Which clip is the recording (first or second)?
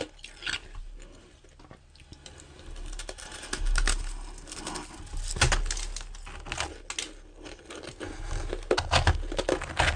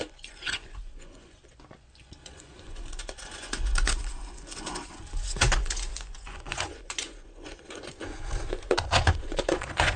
first